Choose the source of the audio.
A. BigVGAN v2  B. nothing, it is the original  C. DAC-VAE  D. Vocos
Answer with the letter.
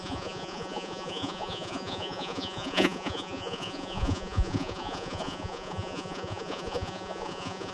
D